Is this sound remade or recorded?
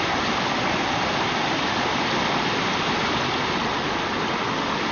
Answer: recorded